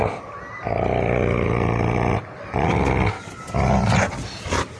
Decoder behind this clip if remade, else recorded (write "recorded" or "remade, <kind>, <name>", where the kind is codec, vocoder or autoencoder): recorded